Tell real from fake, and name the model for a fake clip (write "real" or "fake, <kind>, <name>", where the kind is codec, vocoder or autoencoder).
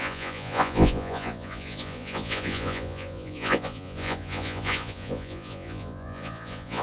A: fake, vocoder, Vocos